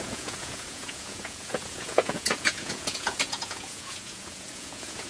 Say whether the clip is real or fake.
fake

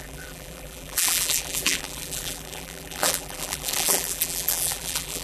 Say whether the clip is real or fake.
fake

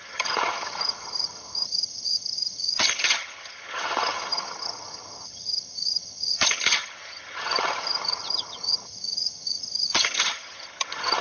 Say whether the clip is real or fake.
fake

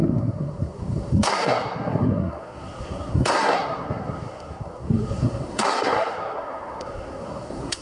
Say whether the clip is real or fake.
fake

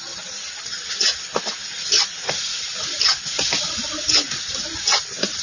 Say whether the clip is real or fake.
real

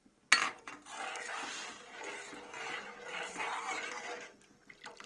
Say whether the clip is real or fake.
real